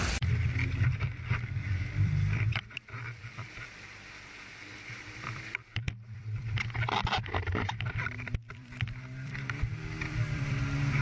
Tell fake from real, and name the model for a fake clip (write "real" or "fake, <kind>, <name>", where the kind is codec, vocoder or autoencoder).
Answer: fake, vocoder, BigVGAN v2